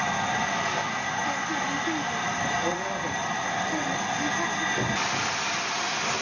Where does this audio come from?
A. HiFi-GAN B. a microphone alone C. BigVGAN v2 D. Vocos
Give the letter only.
B